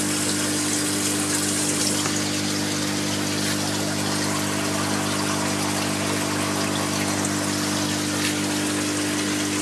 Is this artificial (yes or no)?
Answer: no